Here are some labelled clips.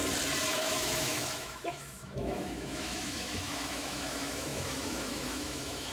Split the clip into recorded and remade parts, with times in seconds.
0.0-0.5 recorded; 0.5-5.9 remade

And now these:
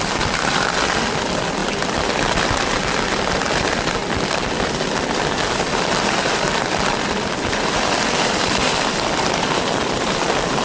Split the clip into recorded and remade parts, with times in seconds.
0.0-10.6 recorded

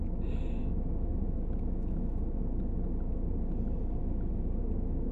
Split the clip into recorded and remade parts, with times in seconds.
0.0-0.6 recorded; 0.6-2.4 remade; 2.4-4.0 recorded; 4.0-4.6 remade; 4.6-5.1 recorded

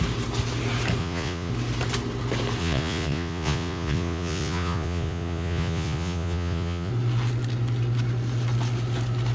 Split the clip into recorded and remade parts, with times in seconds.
0.0-1.0 recorded; 1.0-1.5 remade; 1.5-2.6 recorded; 2.6-6.9 remade; 6.9-9.3 recorded

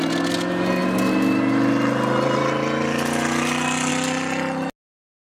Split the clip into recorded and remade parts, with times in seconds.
0.0-5.2 recorded

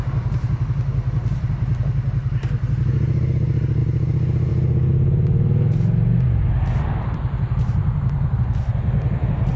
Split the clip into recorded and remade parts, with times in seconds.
0.0-3.8 recorded; 3.8-4.5 remade; 4.5-7.8 recorded; 7.8-8.4 remade; 8.4-9.6 recorded